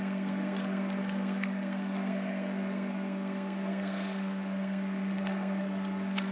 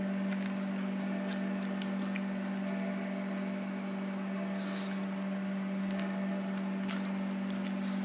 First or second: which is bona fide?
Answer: second